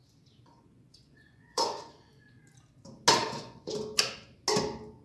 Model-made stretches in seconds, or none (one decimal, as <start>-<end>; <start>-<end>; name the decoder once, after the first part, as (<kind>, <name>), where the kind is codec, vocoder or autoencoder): 0.5-2.4 (vocoder, Vocos); 3.2-3.8